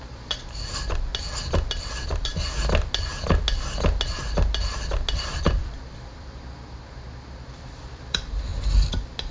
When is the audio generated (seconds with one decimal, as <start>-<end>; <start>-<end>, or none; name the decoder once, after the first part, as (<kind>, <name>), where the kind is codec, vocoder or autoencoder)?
0.0-1.1 (vocoder, BigVGAN v2); 1.7-2.3; 5.2-8.5